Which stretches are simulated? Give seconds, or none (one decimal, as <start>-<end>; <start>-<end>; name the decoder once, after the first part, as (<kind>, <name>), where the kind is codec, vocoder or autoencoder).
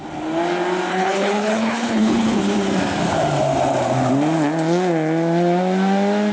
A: 0.9-2.4 (codec, HILCodec)